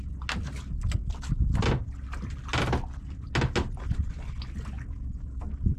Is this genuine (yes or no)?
yes